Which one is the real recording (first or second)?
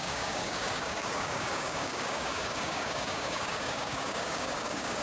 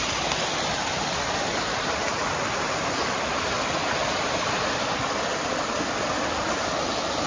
second